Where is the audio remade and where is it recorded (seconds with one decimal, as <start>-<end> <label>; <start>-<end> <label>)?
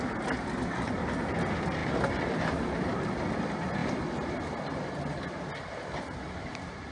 0.0-6.9 recorded